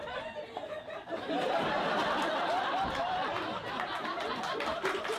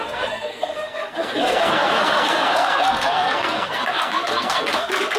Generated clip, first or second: second